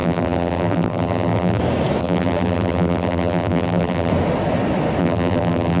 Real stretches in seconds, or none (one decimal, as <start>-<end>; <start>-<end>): 1.6-2.0; 4.1-5.0